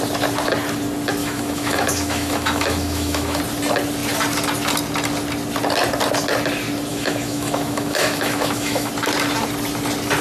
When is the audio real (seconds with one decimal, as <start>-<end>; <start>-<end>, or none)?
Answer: 0.0-1.2; 3.4-6.9; 8.9-10.2